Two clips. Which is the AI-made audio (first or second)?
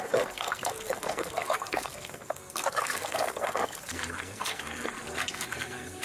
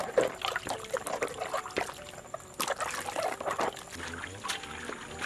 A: first